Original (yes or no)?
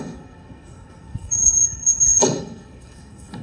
no